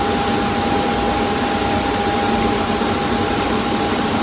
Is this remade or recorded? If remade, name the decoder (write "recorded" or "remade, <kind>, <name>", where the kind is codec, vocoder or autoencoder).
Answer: recorded